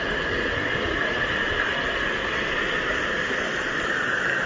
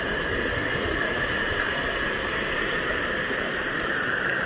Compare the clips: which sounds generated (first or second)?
second